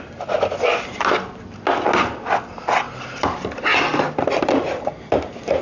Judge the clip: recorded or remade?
recorded